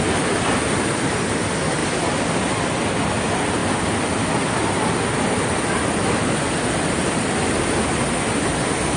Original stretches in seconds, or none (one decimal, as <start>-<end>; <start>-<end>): 0.0-9.0